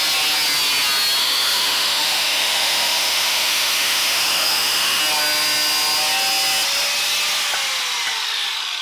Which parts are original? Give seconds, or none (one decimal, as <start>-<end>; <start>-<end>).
0.0-1.2; 5.0-8.8